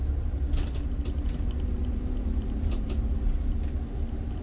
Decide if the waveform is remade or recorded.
recorded